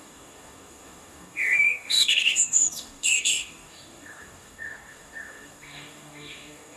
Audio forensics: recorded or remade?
remade